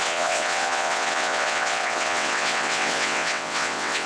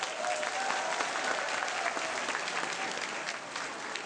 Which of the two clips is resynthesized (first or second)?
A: first